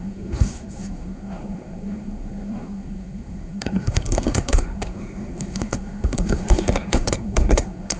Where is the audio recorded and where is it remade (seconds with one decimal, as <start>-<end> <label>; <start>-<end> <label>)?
0.0-8.0 remade